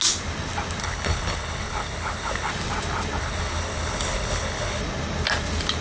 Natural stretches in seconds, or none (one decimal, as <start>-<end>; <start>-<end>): 0.0-0.8; 2.5-3.2; 4.8-5.8

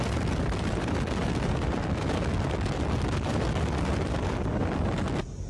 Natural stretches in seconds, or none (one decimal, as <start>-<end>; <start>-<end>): 0.0-5.5